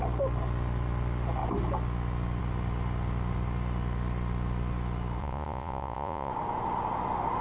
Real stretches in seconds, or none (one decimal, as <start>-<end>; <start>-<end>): 0.0-5.2; 6.3-7.4